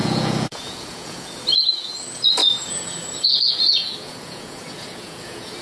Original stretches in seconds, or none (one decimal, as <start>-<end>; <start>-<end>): none